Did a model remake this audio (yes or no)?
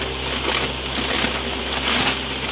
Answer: no